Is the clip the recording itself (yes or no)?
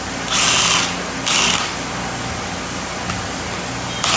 yes